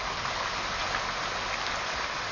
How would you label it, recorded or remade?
recorded